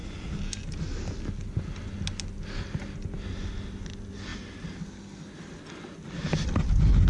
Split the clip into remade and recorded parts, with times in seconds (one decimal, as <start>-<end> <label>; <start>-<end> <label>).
0.0-7.1 recorded